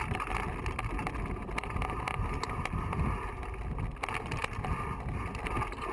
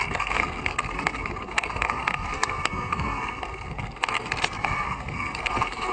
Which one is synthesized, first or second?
second